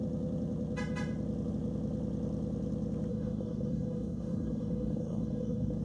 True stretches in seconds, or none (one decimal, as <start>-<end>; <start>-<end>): 0.0-3.1